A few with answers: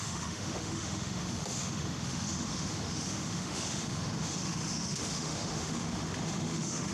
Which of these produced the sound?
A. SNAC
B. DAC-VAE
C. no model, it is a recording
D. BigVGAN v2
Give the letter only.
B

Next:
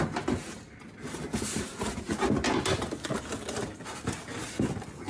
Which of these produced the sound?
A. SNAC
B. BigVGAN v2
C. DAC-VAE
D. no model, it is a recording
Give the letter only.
D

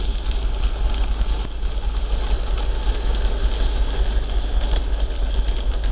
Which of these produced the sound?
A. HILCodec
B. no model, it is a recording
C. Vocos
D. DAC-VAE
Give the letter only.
B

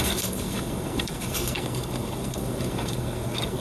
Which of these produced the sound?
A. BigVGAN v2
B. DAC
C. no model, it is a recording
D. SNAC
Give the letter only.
D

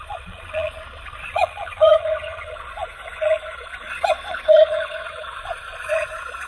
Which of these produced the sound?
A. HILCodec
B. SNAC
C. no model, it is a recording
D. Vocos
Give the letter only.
D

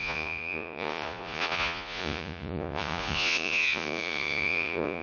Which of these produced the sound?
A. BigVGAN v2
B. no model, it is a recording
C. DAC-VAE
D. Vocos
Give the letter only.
D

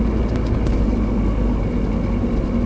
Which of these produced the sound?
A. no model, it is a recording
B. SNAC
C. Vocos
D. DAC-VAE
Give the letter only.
A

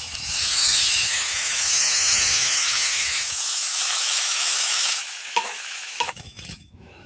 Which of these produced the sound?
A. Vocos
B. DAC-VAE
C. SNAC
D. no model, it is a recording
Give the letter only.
B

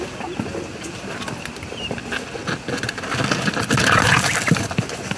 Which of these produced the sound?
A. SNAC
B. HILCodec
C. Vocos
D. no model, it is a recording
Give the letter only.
D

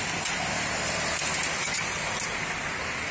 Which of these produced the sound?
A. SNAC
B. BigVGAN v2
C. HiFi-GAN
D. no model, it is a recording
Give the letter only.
D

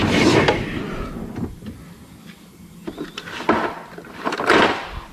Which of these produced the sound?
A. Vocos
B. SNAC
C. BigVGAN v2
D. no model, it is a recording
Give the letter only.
D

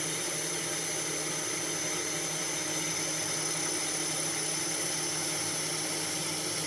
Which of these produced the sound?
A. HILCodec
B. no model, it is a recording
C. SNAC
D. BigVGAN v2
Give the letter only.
B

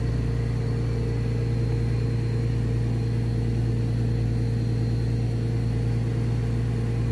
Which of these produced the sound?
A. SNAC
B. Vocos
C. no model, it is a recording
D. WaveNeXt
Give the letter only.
C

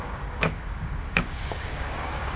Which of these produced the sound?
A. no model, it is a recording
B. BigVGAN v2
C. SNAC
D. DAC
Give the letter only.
D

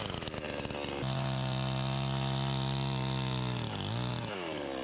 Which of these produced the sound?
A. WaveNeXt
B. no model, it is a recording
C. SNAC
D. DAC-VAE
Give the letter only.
B